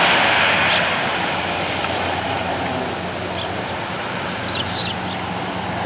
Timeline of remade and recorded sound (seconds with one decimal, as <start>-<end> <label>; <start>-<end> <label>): 0.0-1.8 recorded; 1.8-2.7 remade; 2.7-5.9 recorded